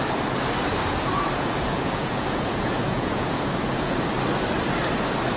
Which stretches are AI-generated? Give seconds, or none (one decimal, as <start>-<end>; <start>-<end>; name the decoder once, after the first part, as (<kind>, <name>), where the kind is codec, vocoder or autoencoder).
0.8-4.0 (vocoder, Vocos)